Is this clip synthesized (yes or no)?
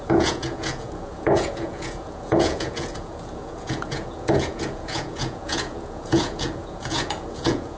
yes